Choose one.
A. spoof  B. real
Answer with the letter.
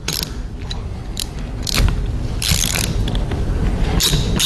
A